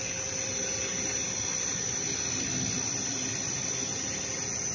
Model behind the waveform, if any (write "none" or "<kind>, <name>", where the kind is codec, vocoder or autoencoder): none